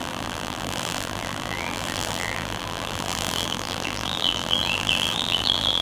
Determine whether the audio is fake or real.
fake